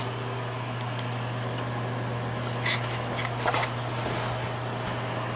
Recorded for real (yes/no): yes